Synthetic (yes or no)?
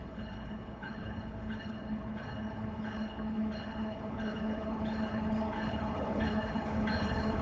yes